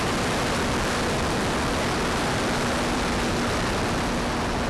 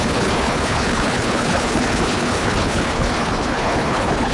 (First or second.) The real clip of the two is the first